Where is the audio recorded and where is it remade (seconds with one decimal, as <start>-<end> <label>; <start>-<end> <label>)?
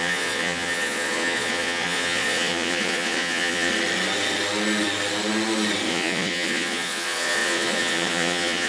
0.0-3.7 remade; 3.7-5.9 recorded; 5.9-8.7 remade